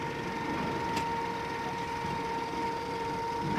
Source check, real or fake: real